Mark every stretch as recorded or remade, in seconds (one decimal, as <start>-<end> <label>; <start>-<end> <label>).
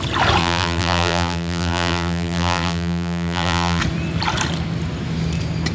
0.0-0.4 recorded; 0.4-3.8 remade; 3.8-5.7 recorded